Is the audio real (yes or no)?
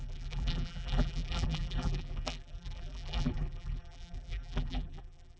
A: no